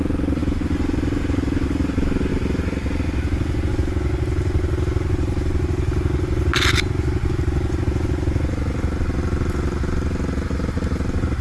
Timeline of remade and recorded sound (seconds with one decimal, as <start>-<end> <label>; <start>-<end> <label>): 0.0-11.4 recorded

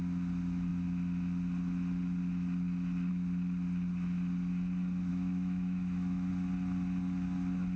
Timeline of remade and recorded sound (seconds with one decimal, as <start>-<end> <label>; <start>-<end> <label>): 0.0-5.1 recorded; 5.1-6.3 remade; 6.3-7.8 recorded

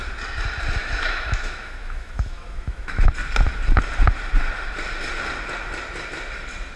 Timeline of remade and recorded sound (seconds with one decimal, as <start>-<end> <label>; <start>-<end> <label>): 0.0-0.8 recorded; 0.8-3.1 remade; 3.1-6.8 recorded

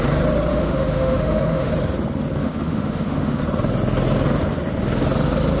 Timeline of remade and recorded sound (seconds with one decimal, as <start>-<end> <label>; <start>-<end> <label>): 0.0-0.5 recorded; 0.5-1.7 remade; 1.7-2.4 recorded; 2.4-3.4 remade; 3.4-5.6 recorded

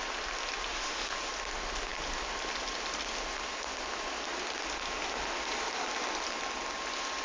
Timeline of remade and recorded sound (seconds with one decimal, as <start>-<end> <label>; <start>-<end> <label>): 0.0-0.7 recorded; 0.7-1.3 remade; 1.3-7.2 recorded

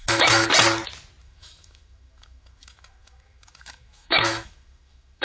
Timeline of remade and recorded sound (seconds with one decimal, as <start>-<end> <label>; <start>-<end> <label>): 0.0-0.5 remade; 0.5-1.2 recorded; 1.2-5.2 remade